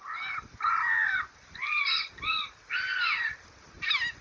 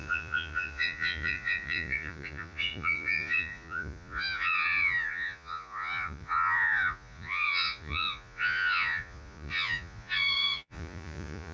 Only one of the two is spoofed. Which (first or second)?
second